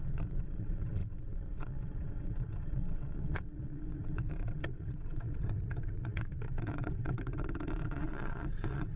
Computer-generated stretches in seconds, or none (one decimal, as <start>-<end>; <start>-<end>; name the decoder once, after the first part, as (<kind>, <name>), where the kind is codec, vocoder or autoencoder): 0.0-9.0 (vocoder, WaveNeXt)